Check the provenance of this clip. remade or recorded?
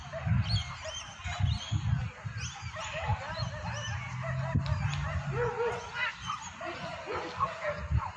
recorded